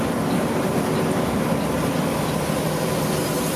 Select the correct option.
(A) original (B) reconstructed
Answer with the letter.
A